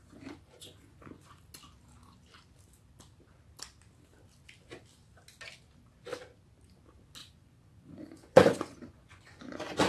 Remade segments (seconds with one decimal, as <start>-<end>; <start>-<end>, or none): 0.0-1.4; 7.2-9.9